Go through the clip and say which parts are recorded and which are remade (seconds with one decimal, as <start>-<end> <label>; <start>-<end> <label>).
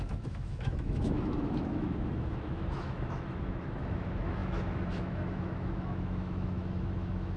0.0-7.4 remade